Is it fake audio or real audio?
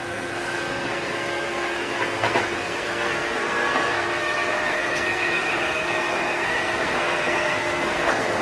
fake